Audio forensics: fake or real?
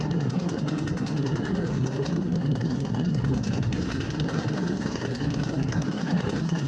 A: fake